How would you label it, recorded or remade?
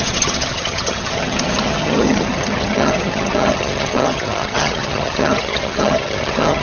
remade